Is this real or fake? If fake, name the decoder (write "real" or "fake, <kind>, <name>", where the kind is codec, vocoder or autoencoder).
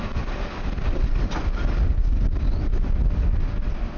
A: real